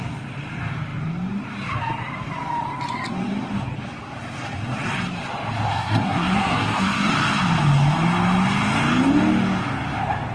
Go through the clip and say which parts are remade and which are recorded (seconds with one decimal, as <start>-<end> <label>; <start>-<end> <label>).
0.0-5.7 recorded; 5.7-7.1 remade; 7.1-10.3 recorded